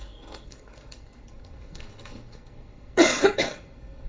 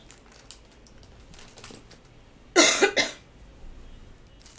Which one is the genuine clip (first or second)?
second